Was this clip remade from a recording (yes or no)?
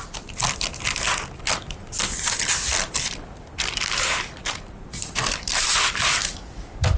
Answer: no